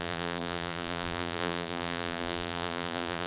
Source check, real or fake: fake